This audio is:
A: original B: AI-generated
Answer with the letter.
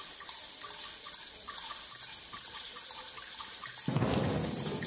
A